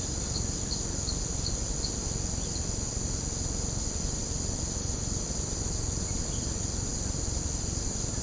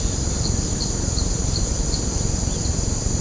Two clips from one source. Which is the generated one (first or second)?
second